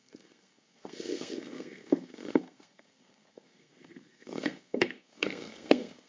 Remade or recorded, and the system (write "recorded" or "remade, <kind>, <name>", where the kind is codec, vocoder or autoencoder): remade, codec, SNAC